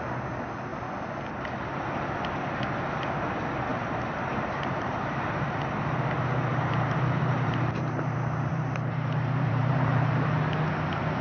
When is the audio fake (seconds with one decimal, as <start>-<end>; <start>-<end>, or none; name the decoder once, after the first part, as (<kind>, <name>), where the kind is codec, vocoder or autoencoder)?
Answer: 3.7-5.5 (vocoder, BigVGAN v2); 6.5-10.3